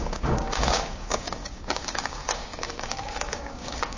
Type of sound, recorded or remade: remade